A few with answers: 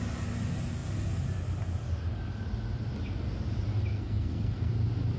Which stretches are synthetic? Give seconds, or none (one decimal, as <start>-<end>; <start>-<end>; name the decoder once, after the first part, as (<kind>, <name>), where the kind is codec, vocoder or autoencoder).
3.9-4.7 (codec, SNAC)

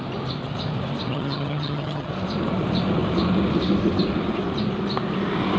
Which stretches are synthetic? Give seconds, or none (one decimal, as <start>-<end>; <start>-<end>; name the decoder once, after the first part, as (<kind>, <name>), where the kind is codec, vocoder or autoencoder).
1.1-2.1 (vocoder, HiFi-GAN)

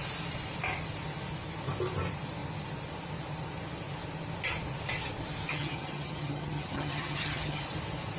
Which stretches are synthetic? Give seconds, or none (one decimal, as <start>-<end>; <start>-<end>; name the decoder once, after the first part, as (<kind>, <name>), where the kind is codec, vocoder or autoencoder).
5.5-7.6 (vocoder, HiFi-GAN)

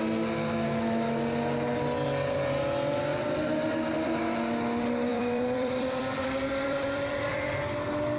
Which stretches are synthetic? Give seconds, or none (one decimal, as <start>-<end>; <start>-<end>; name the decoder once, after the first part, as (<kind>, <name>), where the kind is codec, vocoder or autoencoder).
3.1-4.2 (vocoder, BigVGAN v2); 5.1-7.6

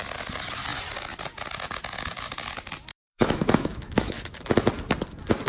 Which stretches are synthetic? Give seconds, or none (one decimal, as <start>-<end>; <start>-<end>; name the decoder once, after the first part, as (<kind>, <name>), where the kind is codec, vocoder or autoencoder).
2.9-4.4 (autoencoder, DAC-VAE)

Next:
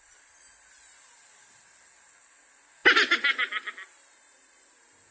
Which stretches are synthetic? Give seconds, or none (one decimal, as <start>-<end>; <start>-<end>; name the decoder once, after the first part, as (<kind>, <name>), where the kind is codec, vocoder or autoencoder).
none

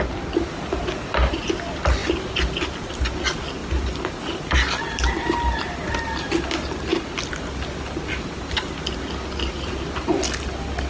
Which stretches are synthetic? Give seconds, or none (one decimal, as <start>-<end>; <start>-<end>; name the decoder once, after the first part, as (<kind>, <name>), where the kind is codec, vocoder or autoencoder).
none

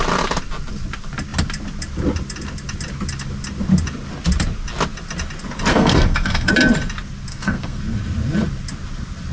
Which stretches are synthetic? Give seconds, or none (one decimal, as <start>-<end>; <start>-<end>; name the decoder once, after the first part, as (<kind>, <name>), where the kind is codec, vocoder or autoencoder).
5.7-6.5 (codec, SNAC); 7.3-7.8